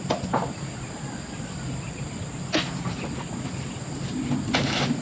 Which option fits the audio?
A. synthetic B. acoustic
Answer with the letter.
B